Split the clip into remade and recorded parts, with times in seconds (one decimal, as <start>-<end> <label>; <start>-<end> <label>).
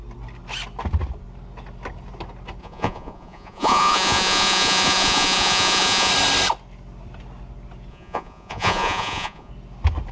0.0-2.6 recorded; 2.6-6.1 remade; 6.1-7.9 recorded; 7.9-9.5 remade; 9.5-10.1 recorded